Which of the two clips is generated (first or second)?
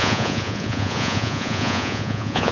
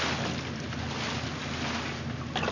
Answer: first